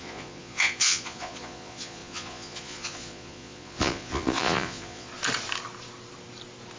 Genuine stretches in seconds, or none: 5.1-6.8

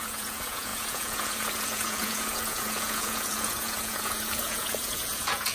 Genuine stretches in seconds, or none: none